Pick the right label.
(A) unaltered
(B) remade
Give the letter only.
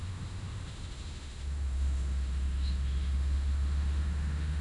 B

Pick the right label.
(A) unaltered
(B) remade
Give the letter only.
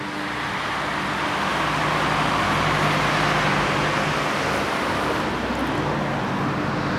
A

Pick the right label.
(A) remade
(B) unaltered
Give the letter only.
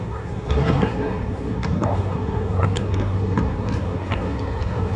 A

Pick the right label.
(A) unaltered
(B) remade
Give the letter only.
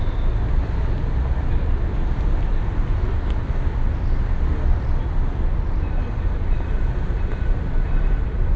A